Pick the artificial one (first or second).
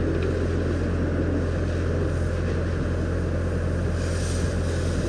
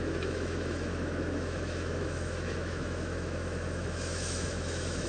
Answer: second